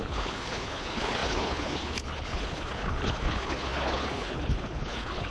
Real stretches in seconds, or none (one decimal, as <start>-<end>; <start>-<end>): none